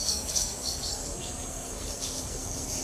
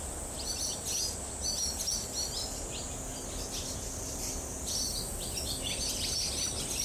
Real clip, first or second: second